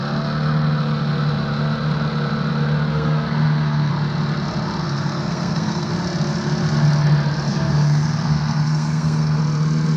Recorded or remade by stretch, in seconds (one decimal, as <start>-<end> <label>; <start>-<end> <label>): 0.0-2.9 recorded; 2.9-3.9 remade; 3.9-4.8 recorded; 4.8-5.9 remade; 5.9-7.5 recorded; 7.5-9.4 remade; 9.4-10.0 recorded